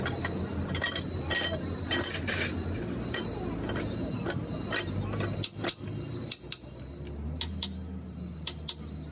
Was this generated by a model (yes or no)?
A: no